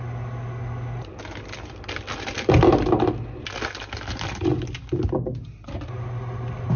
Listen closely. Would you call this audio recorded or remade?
recorded